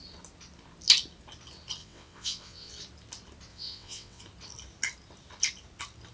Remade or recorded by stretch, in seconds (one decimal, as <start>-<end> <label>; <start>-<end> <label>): 0.0-1.8 recorded; 1.8-2.7 remade; 2.7-3.5 recorded; 3.5-4.2 remade; 4.2-6.1 recorded